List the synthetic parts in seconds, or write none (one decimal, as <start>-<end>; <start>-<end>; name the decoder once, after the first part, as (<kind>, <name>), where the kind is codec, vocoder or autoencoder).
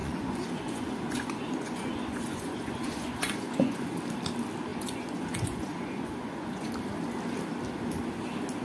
0.0-4.0 (vocoder, Vocos); 4.7-6.7